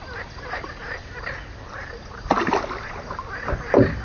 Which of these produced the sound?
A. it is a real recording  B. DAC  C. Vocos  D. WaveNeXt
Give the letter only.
A